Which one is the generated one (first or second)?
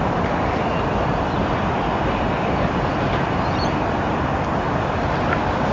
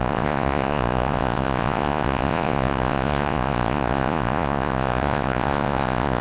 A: second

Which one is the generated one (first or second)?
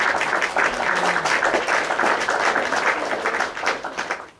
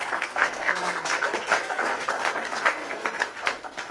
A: second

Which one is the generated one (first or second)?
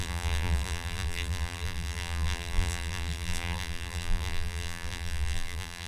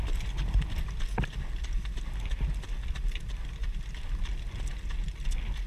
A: first